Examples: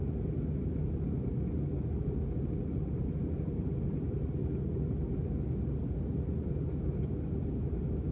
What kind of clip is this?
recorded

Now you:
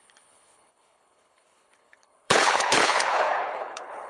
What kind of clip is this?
remade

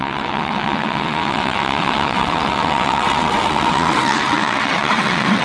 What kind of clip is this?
remade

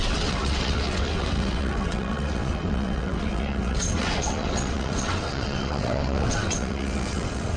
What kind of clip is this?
remade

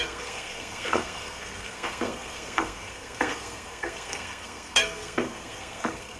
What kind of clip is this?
remade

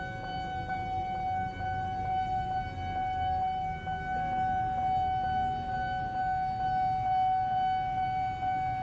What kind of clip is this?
recorded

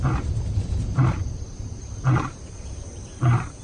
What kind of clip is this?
remade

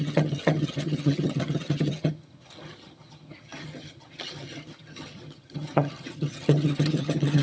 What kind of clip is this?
remade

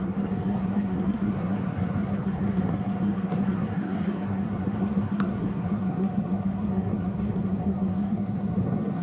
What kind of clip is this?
remade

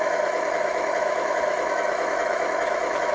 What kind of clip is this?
remade